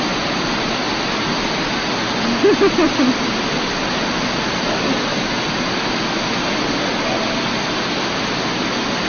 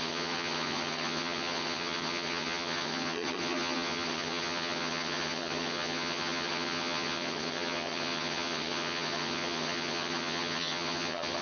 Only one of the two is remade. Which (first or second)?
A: second